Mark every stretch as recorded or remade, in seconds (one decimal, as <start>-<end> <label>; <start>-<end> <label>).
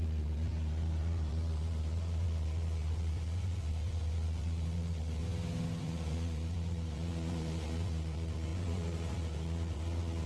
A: 0.0-5.2 remade; 5.2-5.8 recorded; 5.8-10.3 remade